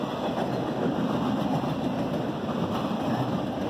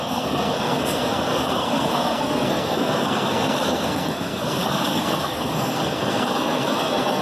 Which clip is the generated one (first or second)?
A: second